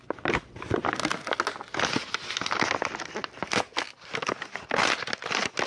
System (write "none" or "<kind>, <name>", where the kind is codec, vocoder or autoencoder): none